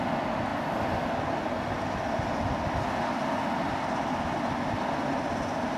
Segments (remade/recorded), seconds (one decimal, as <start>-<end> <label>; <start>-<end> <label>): 0.0-5.8 recorded